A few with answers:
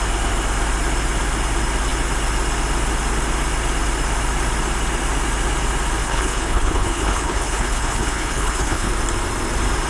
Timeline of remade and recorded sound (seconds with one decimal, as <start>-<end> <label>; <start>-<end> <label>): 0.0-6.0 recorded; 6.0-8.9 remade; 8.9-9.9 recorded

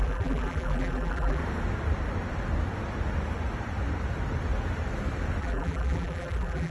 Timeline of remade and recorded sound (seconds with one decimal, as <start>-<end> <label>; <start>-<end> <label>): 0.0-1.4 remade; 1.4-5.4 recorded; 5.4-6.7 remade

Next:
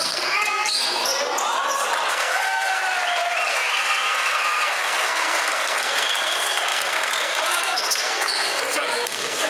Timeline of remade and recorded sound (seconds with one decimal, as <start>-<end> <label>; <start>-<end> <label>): 0.0-1.1 remade; 1.1-2.1 recorded; 2.1-2.8 remade; 2.8-3.5 recorded; 3.5-9.5 remade